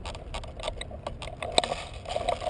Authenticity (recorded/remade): recorded